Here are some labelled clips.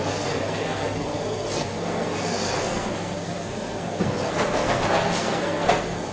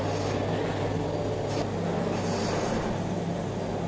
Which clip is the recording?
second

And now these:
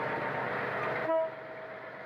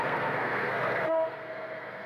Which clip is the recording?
first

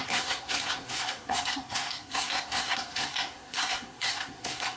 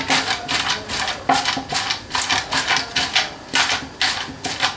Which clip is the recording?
second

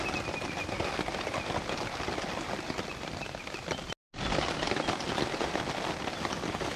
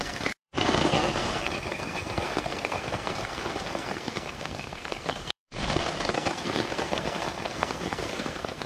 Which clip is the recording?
first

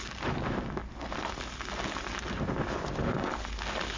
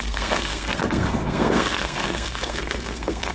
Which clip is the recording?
first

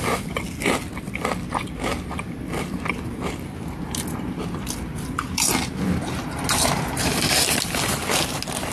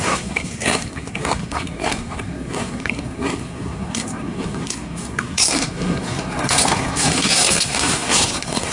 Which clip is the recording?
first